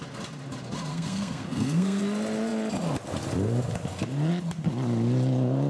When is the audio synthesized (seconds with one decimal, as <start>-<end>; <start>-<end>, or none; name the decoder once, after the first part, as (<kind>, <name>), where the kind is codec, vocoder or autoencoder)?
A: 0.9-2.0 (codec, SNAC)